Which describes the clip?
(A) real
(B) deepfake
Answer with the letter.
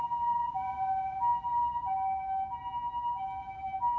A